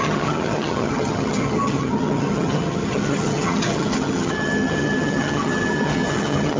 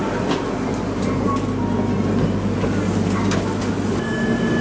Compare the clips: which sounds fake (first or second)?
first